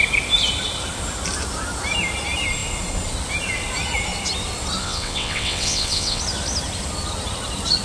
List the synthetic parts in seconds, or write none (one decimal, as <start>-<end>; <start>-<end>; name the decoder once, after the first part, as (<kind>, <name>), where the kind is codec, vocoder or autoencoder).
4.8-6.2 (vocoder, WaveNeXt)